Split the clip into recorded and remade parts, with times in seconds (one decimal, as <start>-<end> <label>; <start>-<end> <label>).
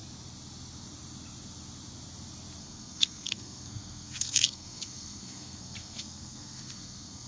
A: 0.0-2.6 recorded; 2.6-7.3 remade